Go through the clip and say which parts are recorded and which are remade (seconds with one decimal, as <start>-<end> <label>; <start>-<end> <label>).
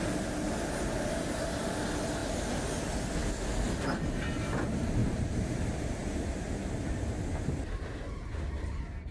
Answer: 0.0-5.0 recorded; 5.0-5.6 remade; 5.6-9.1 recorded